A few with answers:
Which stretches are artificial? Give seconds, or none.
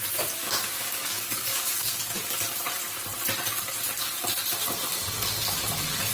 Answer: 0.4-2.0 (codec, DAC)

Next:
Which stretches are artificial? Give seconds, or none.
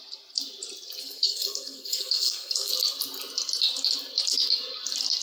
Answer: 1.0-2.7 (codec, SNAC)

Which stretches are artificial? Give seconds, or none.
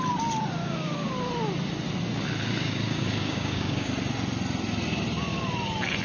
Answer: 0.6-1.1 (codec, DAC); 2.6-3.9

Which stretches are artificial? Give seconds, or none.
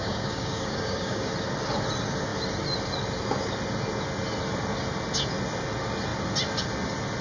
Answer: 0.0-1.3 (codec, DAC)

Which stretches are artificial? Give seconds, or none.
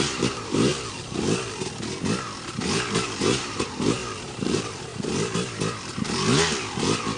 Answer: 0.0-0.7 (vocoder, BigVGAN v2); 3.2-4.0; 4.5-4.9